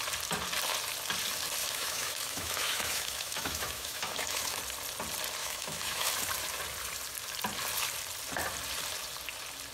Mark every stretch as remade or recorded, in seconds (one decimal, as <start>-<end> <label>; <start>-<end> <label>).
0.0-1.6 recorded; 1.6-4.6 remade; 4.6-5.4 recorded; 5.4-6.1 remade; 6.1-9.7 recorded